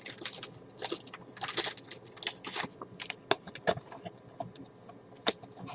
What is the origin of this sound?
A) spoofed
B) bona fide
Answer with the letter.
B